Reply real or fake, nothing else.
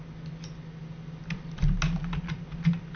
real